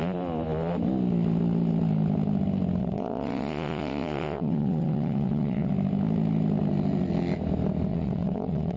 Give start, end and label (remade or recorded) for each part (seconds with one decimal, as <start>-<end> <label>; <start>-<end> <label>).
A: 0.0-2.8 recorded; 2.8-5.7 remade; 5.7-7.9 recorded; 7.9-8.8 remade